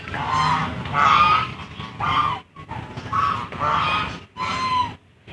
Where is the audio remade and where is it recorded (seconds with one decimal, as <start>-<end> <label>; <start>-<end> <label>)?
0.0-5.3 recorded